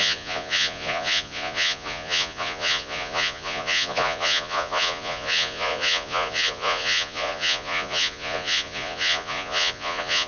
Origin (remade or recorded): remade